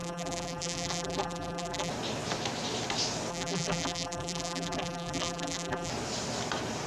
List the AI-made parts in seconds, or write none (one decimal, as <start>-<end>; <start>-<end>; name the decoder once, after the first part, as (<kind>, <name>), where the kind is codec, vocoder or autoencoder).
0.0-1.9 (vocoder, BigVGAN v2); 3.3-5.9